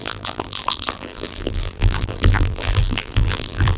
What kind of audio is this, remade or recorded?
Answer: remade